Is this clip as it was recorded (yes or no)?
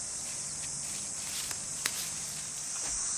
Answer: yes